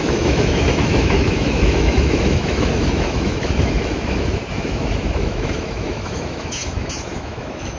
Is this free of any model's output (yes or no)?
no